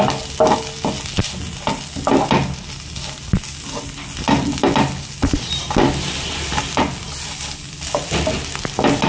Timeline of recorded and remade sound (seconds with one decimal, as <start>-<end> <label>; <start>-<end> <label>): 0.0-9.1 recorded

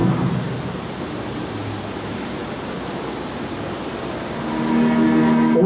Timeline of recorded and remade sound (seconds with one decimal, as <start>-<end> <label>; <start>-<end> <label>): 0.0-5.7 recorded

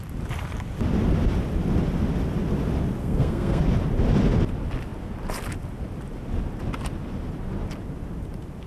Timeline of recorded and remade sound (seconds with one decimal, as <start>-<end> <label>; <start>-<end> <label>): 0.0-3.0 recorded; 3.0-3.6 remade; 3.6-8.7 recorded

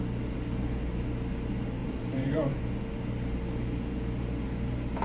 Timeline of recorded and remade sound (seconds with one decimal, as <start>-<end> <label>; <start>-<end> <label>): 0.0-1.8 recorded; 1.8-2.6 remade; 2.6-5.0 recorded

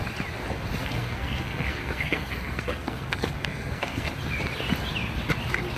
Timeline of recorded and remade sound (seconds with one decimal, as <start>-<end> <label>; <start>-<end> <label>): 0.0-0.8 recorded; 0.8-4.1 remade; 4.1-5.8 recorded

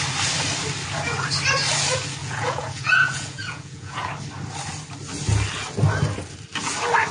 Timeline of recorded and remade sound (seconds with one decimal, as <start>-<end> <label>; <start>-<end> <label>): 0.0-2.2 recorded; 2.2-4.1 remade; 4.1-7.1 recorded

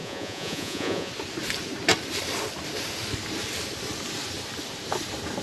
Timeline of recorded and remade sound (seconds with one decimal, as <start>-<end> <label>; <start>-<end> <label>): 0.0-1.1 remade; 1.1-5.4 recorded

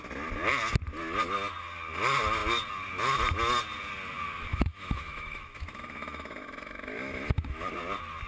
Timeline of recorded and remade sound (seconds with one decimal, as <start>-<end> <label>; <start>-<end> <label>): 0.0-4.5 recorded; 4.5-7.7 remade; 7.7-8.3 recorded